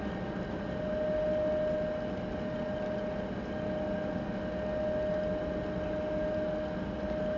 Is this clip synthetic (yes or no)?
no